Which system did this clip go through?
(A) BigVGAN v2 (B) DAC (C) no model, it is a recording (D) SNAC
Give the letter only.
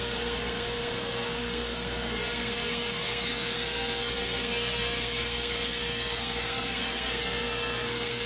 D